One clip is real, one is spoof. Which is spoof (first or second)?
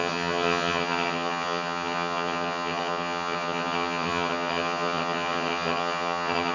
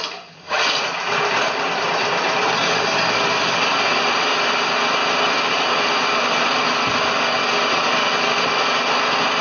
first